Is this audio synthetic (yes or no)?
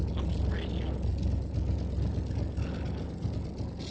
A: no